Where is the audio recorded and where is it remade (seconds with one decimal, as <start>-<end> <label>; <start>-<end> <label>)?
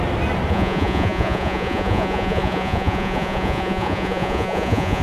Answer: 0.0-0.5 recorded; 0.5-5.0 remade